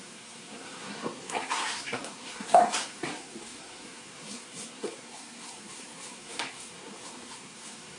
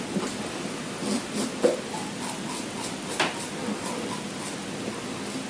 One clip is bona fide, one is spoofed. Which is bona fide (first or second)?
second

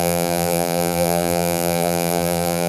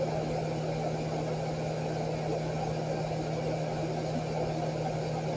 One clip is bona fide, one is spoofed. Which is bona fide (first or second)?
second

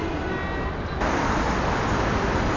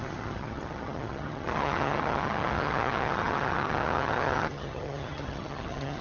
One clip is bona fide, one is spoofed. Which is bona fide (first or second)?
first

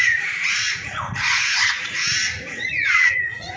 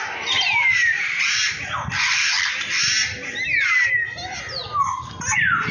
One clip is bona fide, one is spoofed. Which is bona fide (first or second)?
second